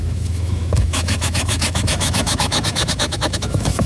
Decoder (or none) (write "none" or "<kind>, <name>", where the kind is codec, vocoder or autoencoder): autoencoder, DAC-VAE